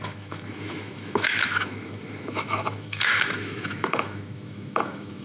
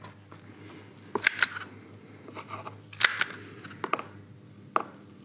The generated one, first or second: first